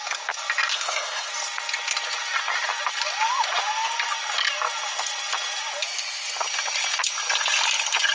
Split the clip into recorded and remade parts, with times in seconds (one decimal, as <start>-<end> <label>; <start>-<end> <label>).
0.0-0.7 recorded; 0.7-1.3 remade; 1.3-8.1 recorded